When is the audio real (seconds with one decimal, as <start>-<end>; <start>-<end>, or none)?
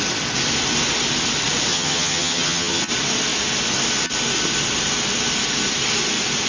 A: 0.0-1.7; 2.8-6.5